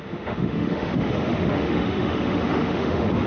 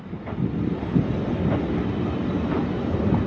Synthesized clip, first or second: first